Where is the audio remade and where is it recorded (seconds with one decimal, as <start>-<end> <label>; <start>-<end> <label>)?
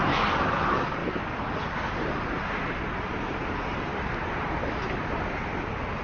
0.0-6.0 recorded